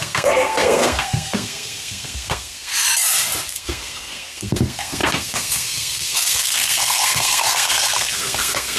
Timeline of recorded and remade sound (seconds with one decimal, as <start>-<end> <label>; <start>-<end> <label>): 0.0-2.7 remade; 2.7-3.5 recorded; 3.5-8.8 remade